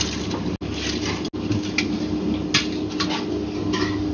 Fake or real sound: real